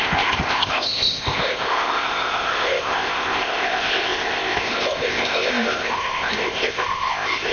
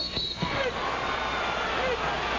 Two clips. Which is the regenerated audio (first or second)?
first